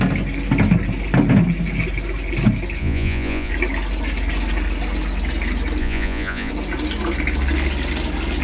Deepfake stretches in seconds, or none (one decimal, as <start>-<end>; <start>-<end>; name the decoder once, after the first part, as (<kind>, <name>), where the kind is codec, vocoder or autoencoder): 2.8-3.5 (vocoder, Vocos); 5.8-6.5